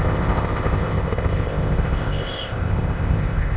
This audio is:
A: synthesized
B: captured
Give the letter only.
A